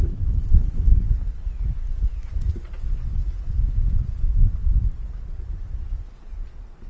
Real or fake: real